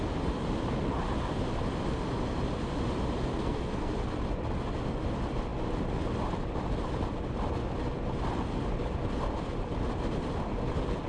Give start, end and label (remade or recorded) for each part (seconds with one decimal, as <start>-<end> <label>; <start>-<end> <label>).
0.0-3.4 recorded; 3.4-3.9 remade; 3.9-11.1 recorded